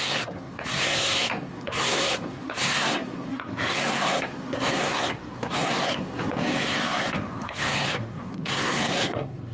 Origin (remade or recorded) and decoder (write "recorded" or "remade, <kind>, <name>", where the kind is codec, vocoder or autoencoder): remade, codec, SNAC